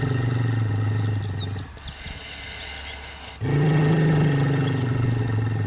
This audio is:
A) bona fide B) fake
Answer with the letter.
A